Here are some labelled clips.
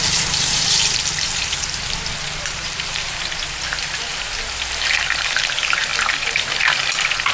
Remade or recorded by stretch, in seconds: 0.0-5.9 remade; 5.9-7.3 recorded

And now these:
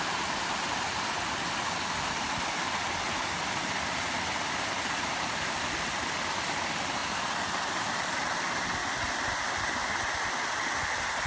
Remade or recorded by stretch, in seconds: 0.0-11.3 recorded

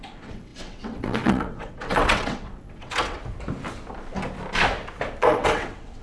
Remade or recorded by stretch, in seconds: 0.0-3.2 remade; 3.2-5.2 recorded; 5.2-6.0 remade

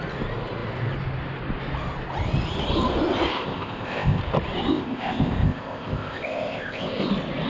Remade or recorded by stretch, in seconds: 0.0-3.3 recorded; 3.3-4.2 remade; 4.2-4.7 recorded; 4.7-7.1 remade; 7.1-7.5 recorded

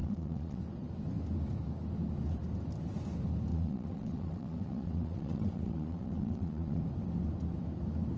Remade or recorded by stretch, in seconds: 0.0-0.6 remade; 0.6-3.5 recorded; 3.5-6.8 remade; 6.8-8.2 recorded

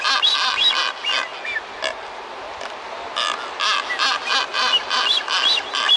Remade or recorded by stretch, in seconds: 0.0-6.0 recorded

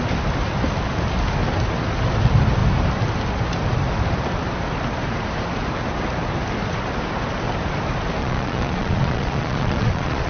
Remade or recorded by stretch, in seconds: 0.0-8.2 recorded; 8.2-10.3 remade